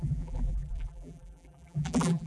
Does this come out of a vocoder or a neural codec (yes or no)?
yes